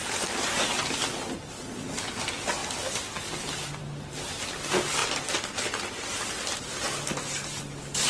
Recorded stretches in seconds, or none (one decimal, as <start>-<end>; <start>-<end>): 0.5-2.6; 4.3-8.1